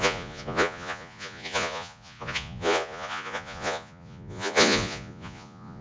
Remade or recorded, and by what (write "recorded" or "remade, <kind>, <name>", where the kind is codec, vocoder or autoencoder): remade, vocoder, Vocos